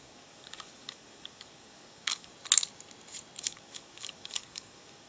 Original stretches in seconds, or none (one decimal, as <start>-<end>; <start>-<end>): 2.3-3.4